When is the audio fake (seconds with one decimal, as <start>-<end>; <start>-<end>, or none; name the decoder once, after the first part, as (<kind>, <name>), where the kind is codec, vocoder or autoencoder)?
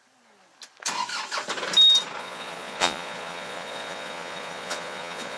2.2-5.4 (vocoder, Vocos)